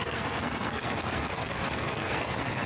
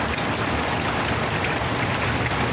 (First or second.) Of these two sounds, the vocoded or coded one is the first